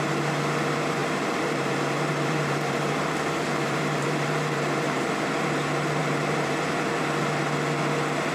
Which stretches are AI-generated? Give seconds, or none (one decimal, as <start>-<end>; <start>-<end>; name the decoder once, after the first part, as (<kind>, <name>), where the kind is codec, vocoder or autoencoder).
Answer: 1.0-5.0 (vocoder, BigVGAN v2); 6.0-6.9